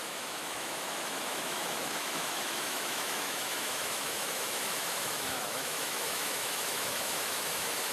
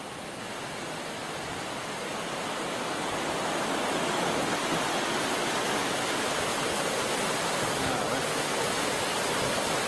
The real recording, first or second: second